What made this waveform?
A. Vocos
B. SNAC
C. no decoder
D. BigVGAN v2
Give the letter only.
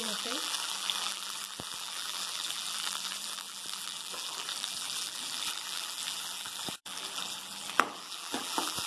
D